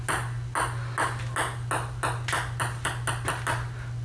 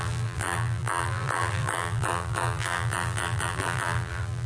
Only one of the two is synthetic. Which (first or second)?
second